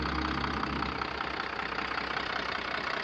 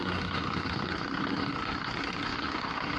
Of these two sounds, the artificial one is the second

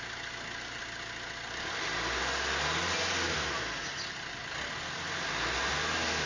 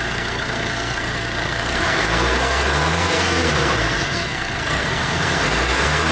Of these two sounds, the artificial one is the second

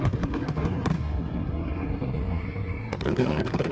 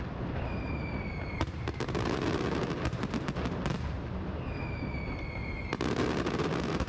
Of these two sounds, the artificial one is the first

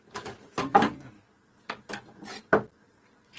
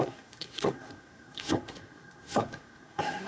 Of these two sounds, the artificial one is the second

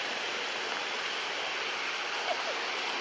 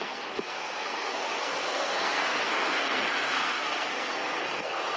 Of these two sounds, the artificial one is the second